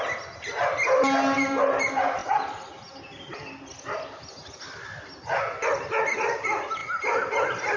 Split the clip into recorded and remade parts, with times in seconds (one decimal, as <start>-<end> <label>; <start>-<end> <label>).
0.0-7.8 recorded